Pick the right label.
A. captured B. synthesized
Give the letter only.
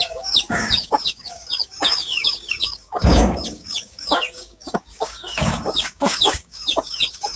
B